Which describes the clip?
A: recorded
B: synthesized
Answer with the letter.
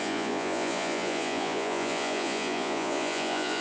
B